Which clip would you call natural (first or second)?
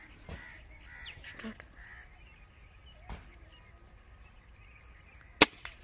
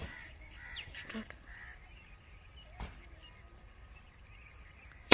first